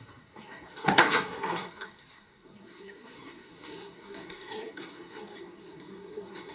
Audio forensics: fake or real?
fake